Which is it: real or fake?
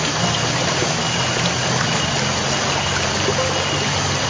real